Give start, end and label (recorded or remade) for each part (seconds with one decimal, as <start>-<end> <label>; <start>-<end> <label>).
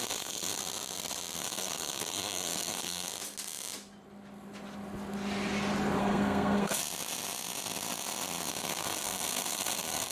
0.0-0.6 remade; 0.6-1.4 recorded; 1.4-3.1 remade; 3.1-6.0 recorded; 6.0-6.8 remade; 6.8-8.5 recorded; 8.5-10.1 remade